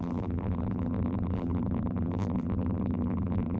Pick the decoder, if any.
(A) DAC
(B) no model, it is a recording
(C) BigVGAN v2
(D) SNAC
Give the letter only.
C